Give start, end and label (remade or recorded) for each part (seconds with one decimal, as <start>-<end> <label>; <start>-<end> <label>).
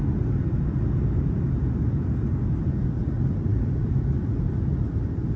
0.0-5.4 recorded